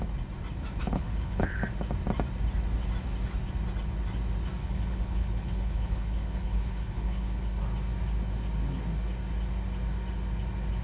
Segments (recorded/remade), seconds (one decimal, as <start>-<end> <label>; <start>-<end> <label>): 0.0-0.8 recorded; 0.8-1.6 remade; 1.6-4.6 recorded; 4.6-7.6 remade; 7.6-10.8 recorded